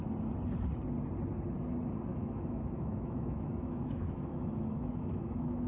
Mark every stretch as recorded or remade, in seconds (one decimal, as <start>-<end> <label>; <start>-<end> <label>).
0.0-2.1 recorded; 2.1-5.7 remade